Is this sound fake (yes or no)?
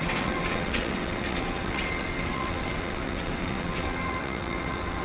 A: yes